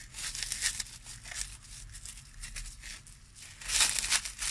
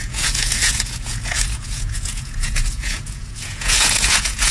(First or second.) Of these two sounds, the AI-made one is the second